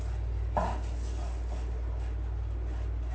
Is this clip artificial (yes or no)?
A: no